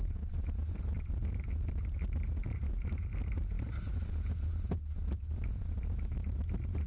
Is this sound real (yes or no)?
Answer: no